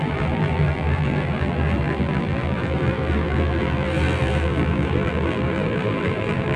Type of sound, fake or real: fake